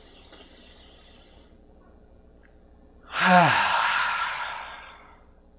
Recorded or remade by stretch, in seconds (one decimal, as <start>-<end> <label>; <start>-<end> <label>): 0.0-5.6 recorded